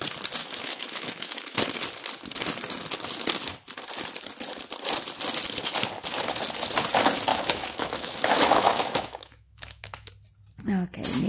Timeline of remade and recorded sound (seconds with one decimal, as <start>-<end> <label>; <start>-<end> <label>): 0.0-0.4 recorded; 0.4-1.6 remade; 1.6-7.3 recorded; 7.3-10.1 remade; 10.1-11.3 recorded